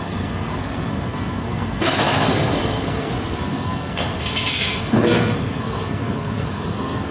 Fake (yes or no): yes